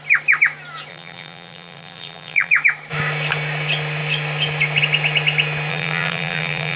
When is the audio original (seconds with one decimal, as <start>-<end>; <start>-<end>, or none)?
0.0-0.9; 2.5-5.7